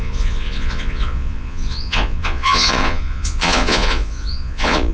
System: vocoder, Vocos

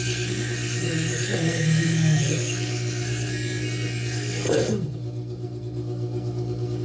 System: codec, SNAC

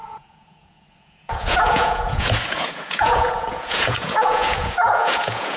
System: vocoder, Vocos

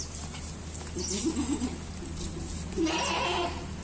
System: none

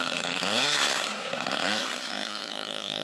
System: codec, SNAC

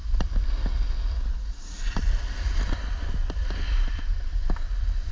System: none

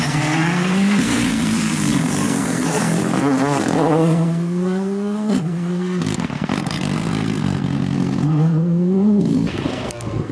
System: codec, SNAC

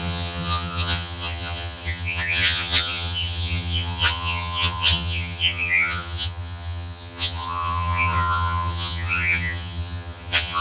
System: vocoder, HiFi-GAN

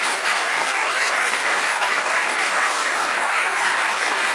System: codec, DAC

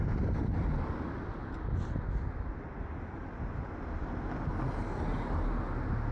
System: none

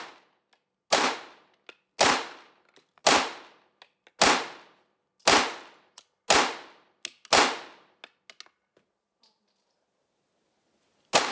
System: none